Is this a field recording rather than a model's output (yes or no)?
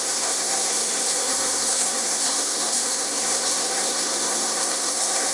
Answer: no